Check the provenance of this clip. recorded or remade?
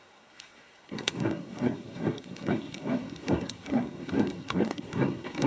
remade